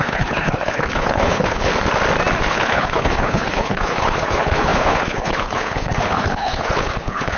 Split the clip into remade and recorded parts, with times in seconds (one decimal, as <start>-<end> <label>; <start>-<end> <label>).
0.0-1.7 remade; 1.7-2.4 recorded; 2.4-7.4 remade